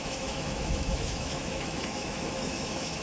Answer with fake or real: fake